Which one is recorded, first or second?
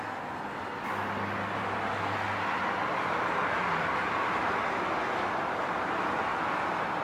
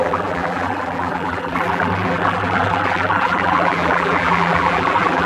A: first